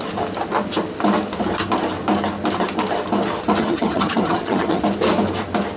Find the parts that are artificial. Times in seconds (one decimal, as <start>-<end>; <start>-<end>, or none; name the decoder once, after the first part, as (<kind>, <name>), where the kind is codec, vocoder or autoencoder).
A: 3.6-4.8 (vocoder, HiFi-GAN)

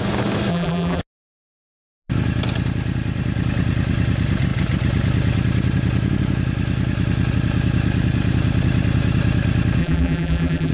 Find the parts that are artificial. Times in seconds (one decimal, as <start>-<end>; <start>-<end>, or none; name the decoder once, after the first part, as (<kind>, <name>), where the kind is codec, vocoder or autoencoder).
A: 0.5-1.0 (vocoder, BigVGAN v2); 9.8-10.7

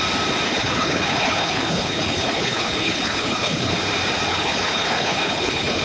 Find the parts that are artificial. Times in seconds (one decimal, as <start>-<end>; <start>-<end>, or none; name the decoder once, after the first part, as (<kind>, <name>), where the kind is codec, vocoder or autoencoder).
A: 0.5-3.7 (codec, HILCodec); 4.3-5.8

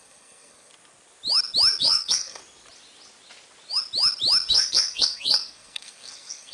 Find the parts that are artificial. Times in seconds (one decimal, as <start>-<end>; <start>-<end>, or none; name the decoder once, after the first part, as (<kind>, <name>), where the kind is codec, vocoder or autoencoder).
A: 0.0-0.7 (codec, SNAC); 1.8-2.4; 4.5-6.5